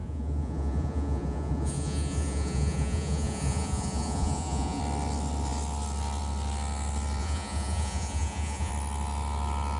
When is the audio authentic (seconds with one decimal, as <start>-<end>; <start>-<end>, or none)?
4.8-7.2; 8.7-9.8

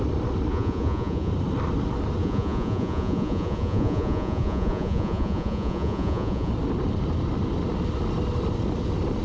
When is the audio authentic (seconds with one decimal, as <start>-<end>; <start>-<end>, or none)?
0.0-0.5; 1.3-2.2; 6.5-9.2